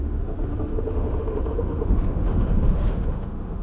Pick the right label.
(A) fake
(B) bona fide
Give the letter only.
A